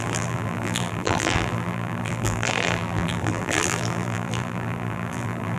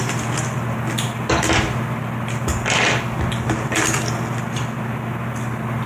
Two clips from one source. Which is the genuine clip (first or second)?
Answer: second